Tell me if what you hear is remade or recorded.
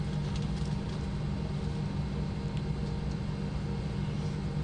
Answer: recorded